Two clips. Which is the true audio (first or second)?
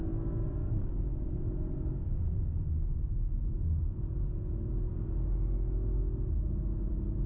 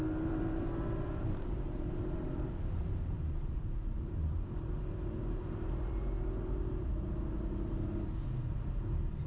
first